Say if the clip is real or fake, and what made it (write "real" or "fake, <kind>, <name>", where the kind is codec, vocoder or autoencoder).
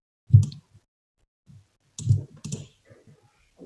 real